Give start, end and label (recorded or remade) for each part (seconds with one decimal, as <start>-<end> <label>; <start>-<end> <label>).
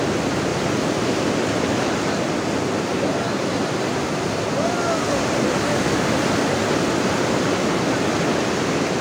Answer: 0.0-9.0 recorded